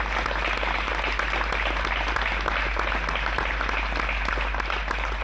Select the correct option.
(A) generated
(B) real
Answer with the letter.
B